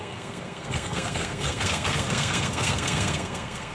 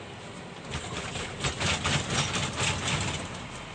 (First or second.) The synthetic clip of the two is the first